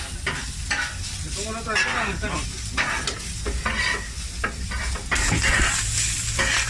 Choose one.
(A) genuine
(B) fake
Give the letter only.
A